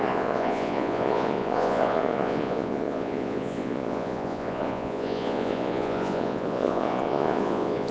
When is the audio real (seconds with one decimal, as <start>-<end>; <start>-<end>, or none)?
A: none